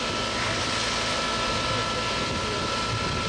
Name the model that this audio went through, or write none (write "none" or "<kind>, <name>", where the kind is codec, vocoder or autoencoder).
none